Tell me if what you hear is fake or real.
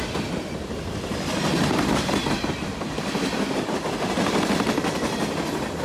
real